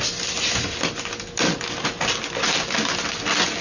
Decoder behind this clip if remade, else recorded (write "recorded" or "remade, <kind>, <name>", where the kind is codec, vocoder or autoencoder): recorded